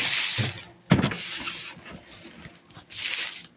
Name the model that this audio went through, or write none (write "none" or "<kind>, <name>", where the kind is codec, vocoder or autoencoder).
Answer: none